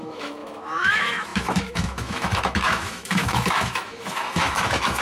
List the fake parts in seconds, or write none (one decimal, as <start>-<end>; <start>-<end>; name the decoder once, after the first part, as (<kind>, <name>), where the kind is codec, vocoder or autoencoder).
0.0-5.0 (autoencoder, DAC-VAE)